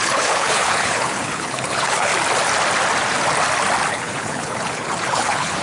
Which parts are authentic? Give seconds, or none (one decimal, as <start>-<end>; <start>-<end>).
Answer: 2.1-3.9